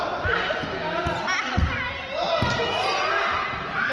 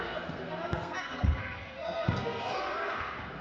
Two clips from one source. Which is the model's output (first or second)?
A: second